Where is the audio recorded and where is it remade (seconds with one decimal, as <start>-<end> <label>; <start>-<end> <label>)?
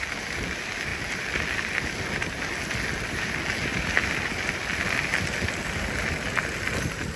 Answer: 0.0-7.2 recorded